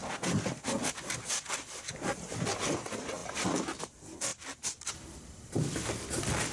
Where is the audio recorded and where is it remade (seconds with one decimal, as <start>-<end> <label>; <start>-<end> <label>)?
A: 0.0-6.5 recorded